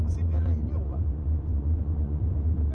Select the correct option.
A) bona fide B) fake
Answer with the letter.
B